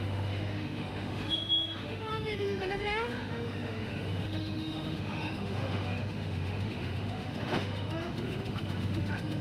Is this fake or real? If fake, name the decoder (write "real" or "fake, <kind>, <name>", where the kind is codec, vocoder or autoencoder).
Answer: fake, autoencoder, DAC-VAE